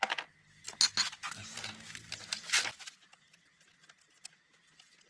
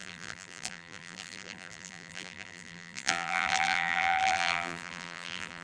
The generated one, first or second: second